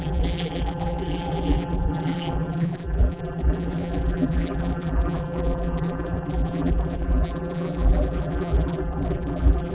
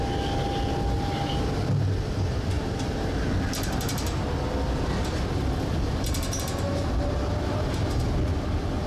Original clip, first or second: second